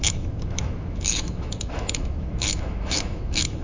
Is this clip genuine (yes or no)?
no